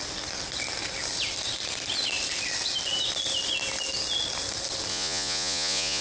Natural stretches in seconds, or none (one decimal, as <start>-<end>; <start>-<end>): 0.0-4.9